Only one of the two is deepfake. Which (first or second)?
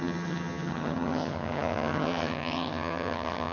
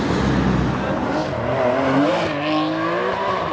first